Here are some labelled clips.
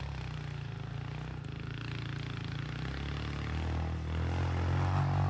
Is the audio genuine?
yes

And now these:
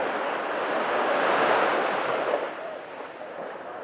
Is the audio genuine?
yes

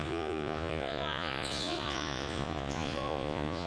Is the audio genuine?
no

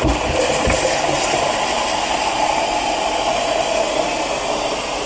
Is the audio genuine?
yes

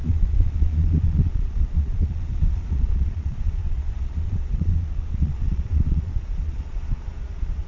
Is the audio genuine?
no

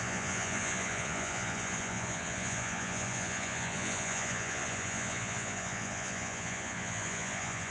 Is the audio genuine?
no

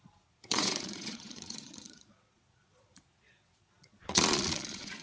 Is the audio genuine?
no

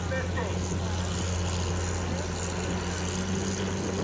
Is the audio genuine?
yes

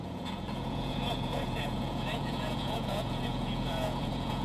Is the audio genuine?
no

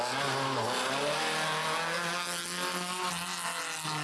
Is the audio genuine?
yes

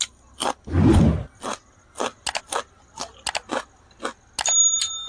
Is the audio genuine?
yes